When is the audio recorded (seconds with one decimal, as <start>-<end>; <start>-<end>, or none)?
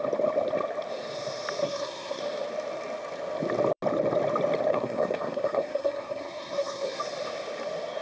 0.0-1.6; 2.2-4.7; 7.0-8.0